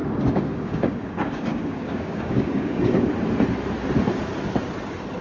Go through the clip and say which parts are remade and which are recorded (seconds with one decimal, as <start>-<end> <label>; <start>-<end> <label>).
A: 0.0-3.1 remade; 3.1-5.2 recorded